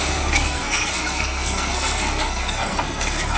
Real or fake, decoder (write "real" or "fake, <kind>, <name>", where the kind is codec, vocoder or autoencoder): fake, codec, SNAC